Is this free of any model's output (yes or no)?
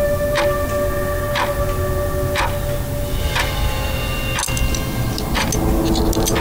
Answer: yes